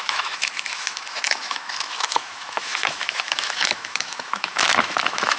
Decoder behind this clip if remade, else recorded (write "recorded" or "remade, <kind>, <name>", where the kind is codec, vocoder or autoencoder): remade, autoencoder, DAC-VAE